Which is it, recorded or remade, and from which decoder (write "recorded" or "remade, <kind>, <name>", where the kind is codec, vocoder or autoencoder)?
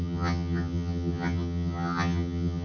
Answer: remade, vocoder, HiFi-GAN